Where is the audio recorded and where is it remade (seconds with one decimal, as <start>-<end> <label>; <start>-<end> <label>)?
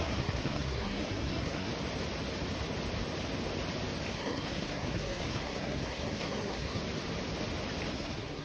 0.0-1.7 remade; 1.7-4.1 recorded; 4.1-6.8 remade; 6.8-7.9 recorded; 7.9-8.4 remade